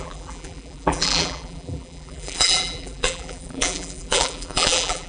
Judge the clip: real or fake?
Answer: fake